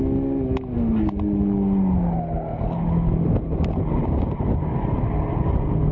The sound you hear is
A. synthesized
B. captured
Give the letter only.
B